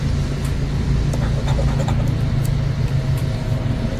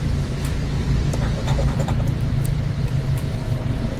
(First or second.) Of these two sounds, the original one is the first